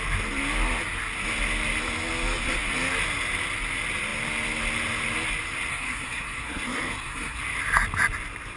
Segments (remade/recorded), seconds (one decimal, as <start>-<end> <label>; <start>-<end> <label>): 0.0-5.7 recorded; 5.7-7.4 remade; 7.4-8.6 recorded